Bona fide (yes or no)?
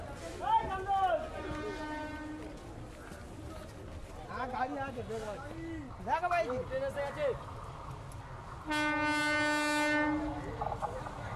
yes